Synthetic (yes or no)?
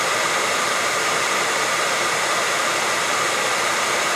yes